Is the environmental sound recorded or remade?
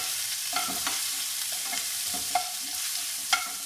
remade